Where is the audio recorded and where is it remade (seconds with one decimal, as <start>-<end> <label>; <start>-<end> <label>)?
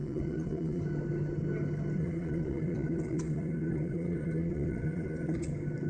0.0-0.8 remade; 0.8-2.0 recorded; 2.0-5.5 remade; 5.5-5.9 recorded